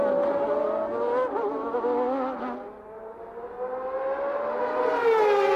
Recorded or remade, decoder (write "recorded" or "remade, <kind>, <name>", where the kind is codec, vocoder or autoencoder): recorded